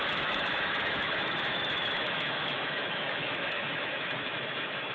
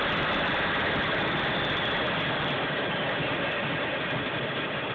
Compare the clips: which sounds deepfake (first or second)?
first